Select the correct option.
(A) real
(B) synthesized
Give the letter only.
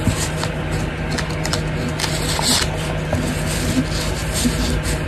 A